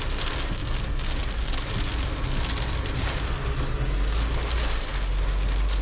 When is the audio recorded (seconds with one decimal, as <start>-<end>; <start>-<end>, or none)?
0.0-5.8

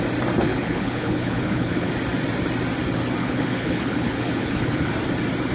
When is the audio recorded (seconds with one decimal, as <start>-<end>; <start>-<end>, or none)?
0.0-0.5; 1.9-3.2; 4.9-5.5

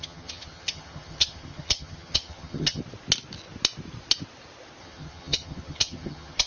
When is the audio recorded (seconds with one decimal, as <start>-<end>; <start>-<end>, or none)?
2.8-4.8

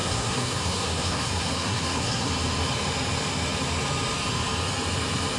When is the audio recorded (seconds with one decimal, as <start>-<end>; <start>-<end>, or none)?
2.3-5.4

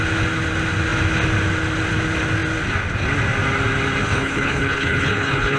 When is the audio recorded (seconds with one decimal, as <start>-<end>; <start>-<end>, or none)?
0.0-4.0

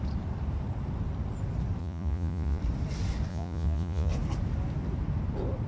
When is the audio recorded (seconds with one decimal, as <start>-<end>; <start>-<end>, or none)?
0.0-1.8; 2.6-3.3; 4.1-5.7